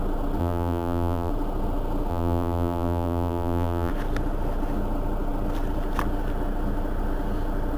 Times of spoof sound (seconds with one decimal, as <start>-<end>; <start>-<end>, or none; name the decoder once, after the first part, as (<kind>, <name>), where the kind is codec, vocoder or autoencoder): 0.4-1.3 (vocoder, BigVGAN v2); 2.1-3.9